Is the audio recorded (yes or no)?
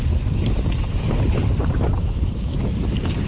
no